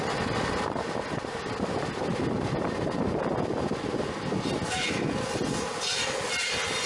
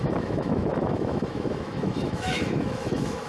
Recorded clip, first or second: first